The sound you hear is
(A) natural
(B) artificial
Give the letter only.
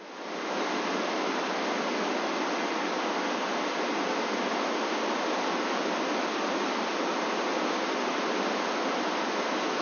A